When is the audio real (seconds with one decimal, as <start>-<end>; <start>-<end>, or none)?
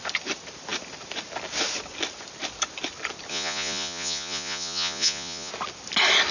0.0-3.3; 5.5-6.3